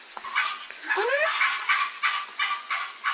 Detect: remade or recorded remade